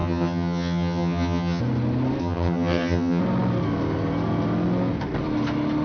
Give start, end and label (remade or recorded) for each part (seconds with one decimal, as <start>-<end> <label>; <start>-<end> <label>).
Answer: 0.0-1.6 remade; 1.6-2.2 recorded; 2.2-3.2 remade; 3.2-5.8 recorded